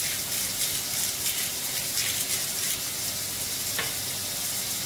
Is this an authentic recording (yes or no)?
yes